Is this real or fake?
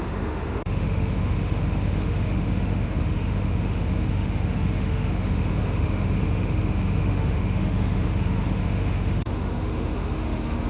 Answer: fake